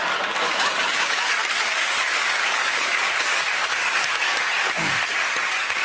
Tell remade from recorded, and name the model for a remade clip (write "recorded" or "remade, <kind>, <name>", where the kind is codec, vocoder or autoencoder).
remade, codec, DAC